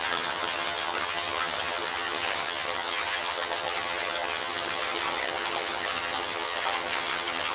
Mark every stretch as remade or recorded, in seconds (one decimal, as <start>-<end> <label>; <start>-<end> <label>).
0.0-7.5 remade

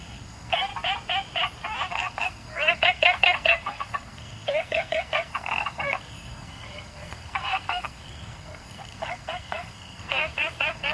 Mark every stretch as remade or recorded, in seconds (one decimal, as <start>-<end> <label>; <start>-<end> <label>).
0.0-0.7 remade; 0.7-1.9 recorded; 1.9-10.9 remade